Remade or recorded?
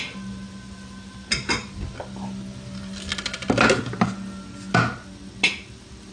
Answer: recorded